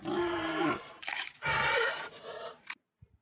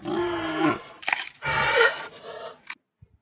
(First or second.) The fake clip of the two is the first